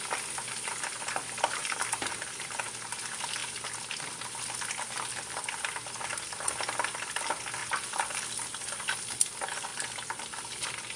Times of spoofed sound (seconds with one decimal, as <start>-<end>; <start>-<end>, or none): 1.6-2.6; 9.7-10.4